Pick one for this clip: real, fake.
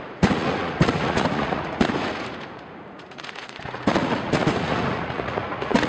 fake